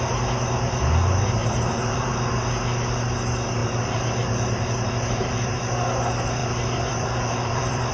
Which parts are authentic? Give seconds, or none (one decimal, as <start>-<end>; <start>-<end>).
0.0-1.4; 2.1-3.6; 5.6-6.4